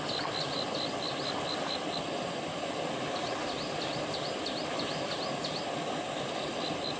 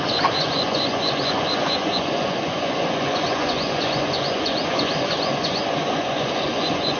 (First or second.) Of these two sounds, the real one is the first